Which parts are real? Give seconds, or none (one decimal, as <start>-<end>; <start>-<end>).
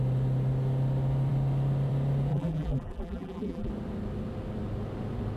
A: 0.0-2.3; 3.7-5.4